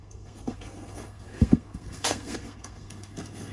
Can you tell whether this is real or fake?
fake